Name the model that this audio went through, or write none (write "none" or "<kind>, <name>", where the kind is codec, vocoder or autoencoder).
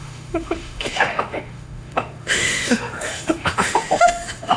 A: autoencoder, DAC-VAE